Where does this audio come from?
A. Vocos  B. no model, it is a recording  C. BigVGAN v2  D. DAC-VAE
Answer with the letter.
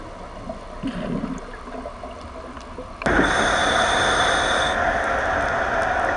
B